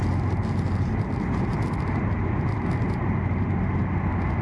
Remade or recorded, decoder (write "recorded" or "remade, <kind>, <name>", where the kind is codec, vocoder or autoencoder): recorded